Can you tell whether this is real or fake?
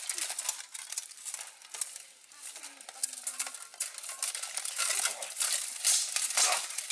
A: real